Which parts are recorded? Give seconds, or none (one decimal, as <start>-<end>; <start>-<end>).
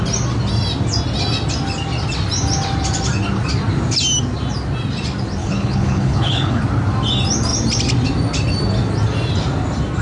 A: 0.0-5.4; 6.6-10.0